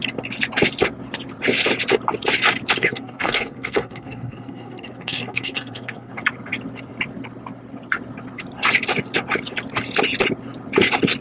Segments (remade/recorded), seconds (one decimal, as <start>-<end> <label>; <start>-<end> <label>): 0.0-2.8 recorded; 2.8-6.1 remade; 6.1-11.2 recorded